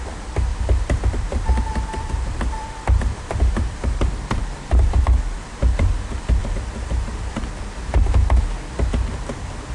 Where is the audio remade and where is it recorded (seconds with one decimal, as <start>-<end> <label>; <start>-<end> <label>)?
0.0-0.5 recorded; 0.5-5.0 remade; 5.0-9.7 recorded